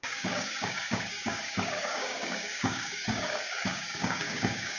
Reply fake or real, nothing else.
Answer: fake